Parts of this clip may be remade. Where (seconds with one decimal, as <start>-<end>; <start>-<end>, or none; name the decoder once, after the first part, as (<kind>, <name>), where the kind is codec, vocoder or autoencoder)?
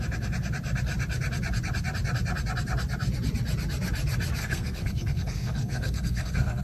4.4-6.6 (codec, SNAC)